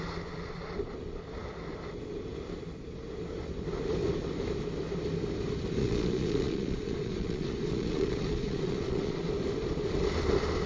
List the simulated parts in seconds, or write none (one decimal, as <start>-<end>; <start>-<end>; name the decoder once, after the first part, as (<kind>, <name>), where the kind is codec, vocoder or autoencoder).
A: 5.8-9.3 (vocoder, Vocos)

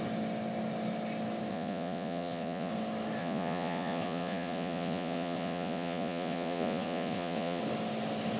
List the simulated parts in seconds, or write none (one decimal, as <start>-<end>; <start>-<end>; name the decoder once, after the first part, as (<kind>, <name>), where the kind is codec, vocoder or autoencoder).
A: 1.5-2.7 (vocoder, Vocos); 3.2-7.6

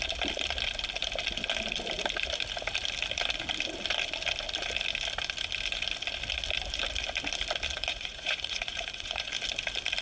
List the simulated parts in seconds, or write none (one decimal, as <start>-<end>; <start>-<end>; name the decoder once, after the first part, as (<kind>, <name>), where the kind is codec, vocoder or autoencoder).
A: 7.9-9.3 (vocoder, Vocos)

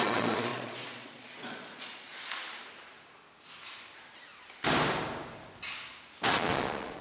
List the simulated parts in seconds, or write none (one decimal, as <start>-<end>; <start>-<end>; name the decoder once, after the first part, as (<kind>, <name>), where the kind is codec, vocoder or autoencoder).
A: 0.0-2.1 (vocoder, Vocos); 6.3-7.0